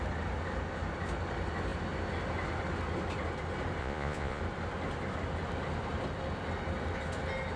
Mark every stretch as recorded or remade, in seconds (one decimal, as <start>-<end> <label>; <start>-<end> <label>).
0.0-3.8 recorded; 3.8-4.4 remade; 4.4-7.6 recorded